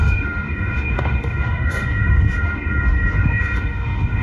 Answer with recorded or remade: remade